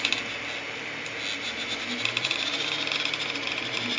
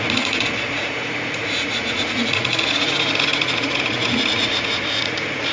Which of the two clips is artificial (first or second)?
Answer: second